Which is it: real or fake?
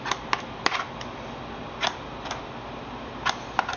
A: real